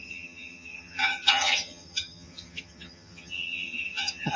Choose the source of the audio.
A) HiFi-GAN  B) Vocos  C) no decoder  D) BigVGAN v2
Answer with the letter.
A